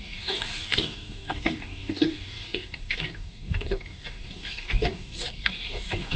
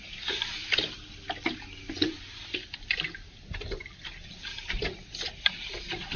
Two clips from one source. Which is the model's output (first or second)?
first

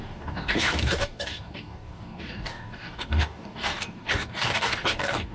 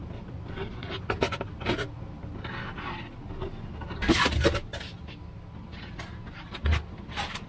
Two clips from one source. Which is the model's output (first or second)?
first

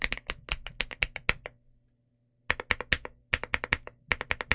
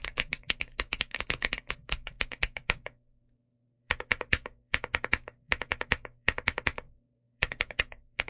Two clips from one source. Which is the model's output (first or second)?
second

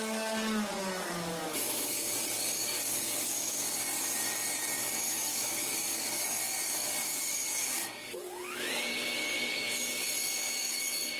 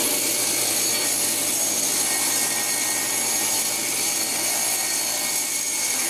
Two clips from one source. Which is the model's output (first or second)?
first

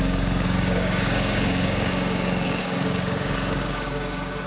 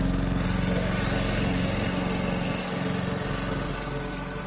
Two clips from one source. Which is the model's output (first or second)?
first